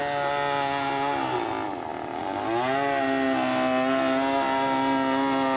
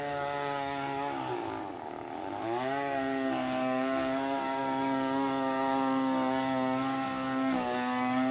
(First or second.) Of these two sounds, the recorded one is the first